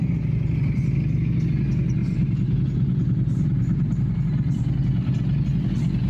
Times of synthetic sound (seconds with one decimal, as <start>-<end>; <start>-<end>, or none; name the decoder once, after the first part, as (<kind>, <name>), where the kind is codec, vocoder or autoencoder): 2.0-4.2 (vocoder, BigVGAN v2)

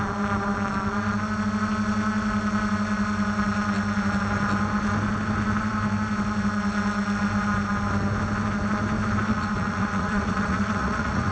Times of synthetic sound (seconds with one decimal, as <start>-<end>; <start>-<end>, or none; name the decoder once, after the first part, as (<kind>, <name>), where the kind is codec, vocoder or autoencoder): 9.3-11.3 (vocoder, Vocos)

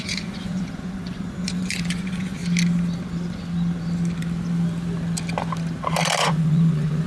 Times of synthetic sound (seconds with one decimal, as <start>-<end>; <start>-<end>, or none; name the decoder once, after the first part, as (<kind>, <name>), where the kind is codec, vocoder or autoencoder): 0.0-2.4 (vocoder, Vocos); 6.2-7.1

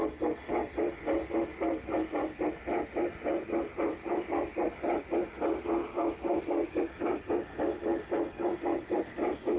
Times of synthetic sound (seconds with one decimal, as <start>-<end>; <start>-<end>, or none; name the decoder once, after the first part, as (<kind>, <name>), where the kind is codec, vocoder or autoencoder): 5.8-6.8 (codec, DAC)

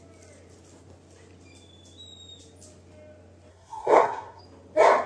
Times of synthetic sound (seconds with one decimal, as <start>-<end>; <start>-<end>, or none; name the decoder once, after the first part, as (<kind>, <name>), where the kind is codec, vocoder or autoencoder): 3.5-4.4 (codec, SNAC)